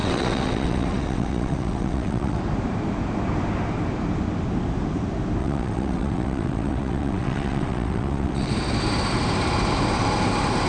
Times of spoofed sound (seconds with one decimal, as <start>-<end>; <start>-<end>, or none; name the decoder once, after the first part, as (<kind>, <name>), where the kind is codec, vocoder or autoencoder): 0.0-2.4 (vocoder, WaveNeXt); 5.4-8.5